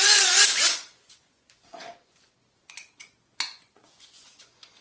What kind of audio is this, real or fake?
fake